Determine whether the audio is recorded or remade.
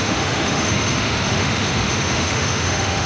remade